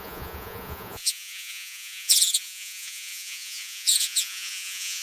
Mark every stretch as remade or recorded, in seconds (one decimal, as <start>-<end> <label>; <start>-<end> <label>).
0.0-5.0 remade